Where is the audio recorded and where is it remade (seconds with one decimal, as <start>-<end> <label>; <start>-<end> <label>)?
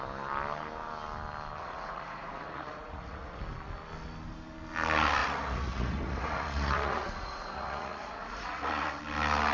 0.0-1.6 recorded; 1.6-3.4 remade; 3.4-5.2 recorded; 5.2-9.0 remade; 9.0-9.5 recorded